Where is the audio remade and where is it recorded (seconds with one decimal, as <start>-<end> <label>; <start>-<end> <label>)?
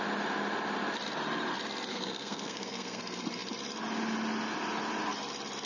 0.0-1.9 recorded; 1.9-3.0 remade; 3.0-5.7 recorded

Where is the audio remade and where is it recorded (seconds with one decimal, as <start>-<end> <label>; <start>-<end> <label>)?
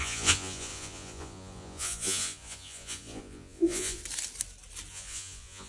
0.0-4.0 remade; 4.0-4.9 recorded; 4.9-5.7 remade